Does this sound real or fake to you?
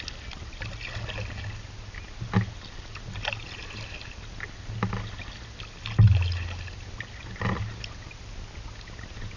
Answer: real